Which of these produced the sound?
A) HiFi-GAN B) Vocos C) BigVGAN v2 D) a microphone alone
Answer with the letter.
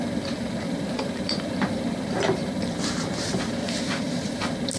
C